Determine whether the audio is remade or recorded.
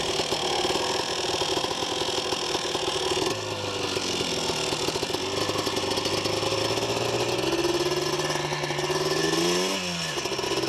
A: recorded